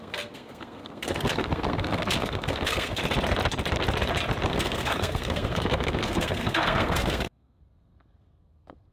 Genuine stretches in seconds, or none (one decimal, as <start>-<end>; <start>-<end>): 3.0-4.5